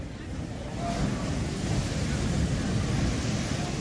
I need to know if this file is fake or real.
real